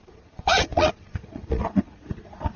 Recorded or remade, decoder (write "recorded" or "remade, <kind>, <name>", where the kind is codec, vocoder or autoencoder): remade, vocoder, Vocos